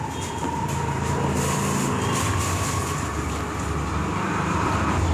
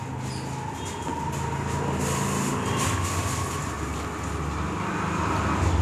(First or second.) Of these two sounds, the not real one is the first